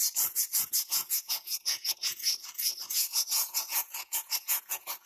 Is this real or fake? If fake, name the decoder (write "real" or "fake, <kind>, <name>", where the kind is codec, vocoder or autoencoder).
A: fake, vocoder, Vocos